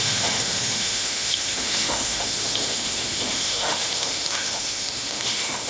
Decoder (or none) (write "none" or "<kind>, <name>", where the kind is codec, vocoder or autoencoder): autoencoder, DAC-VAE